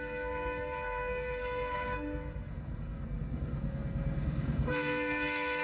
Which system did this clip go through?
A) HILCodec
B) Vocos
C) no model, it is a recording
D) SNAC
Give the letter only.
D